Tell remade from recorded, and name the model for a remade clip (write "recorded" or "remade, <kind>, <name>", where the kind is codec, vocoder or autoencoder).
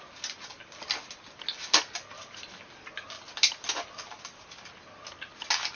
recorded